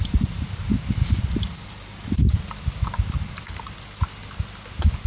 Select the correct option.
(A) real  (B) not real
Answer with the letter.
A